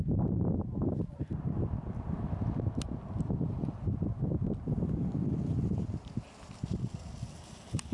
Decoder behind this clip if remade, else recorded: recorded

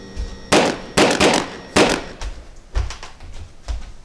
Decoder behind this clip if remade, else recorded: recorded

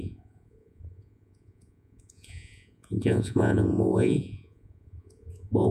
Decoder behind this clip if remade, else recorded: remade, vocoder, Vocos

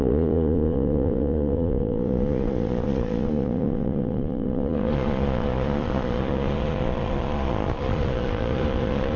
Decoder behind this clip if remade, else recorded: remade, vocoder, Vocos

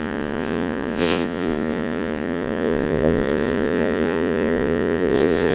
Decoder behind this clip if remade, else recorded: remade, vocoder, Vocos